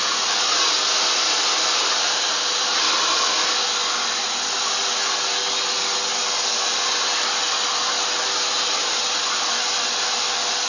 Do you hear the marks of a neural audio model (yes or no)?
no